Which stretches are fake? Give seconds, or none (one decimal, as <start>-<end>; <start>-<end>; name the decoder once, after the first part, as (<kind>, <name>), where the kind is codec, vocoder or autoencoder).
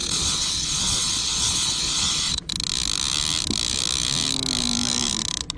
0.0-2.5 (vocoder, Vocos)